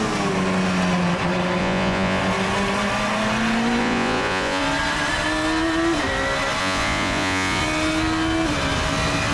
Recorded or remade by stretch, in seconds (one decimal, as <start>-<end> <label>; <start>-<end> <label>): 0.0-1.6 recorded; 1.6-2.2 remade; 2.2-3.8 recorded; 3.8-4.6 remade; 4.6-6.6 recorded; 6.6-7.6 remade; 7.6-9.3 recorded